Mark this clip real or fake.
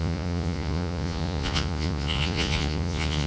fake